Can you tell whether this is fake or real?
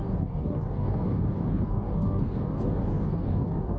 fake